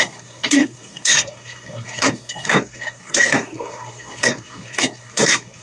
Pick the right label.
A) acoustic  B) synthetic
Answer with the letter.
B